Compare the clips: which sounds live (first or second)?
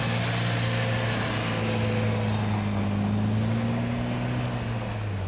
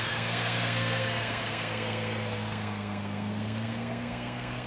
first